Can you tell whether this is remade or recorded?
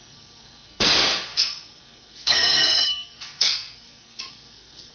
remade